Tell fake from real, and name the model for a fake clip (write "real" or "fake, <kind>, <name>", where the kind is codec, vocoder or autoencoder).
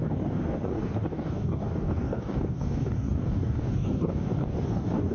fake, codec, DAC